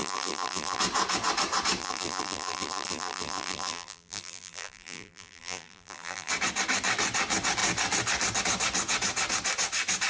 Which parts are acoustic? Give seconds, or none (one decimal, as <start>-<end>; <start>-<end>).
0.8-1.8; 6.3-10.1